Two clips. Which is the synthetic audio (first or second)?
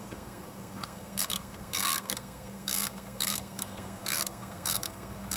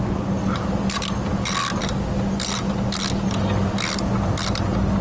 first